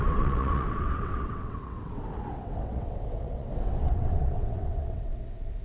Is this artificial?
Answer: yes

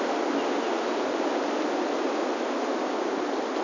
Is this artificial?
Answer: no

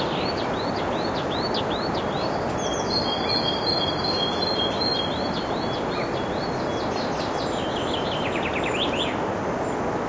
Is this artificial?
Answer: no